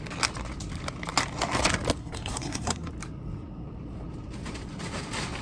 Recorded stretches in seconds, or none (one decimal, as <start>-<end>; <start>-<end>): 0.0-2.0; 2.9-5.4